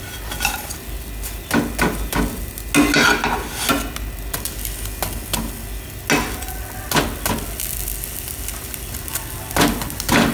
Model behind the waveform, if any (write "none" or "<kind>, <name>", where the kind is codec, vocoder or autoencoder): none